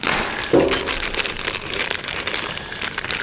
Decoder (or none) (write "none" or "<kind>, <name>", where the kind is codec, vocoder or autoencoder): none